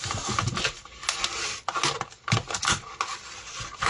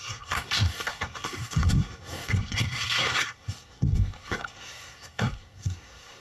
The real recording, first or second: first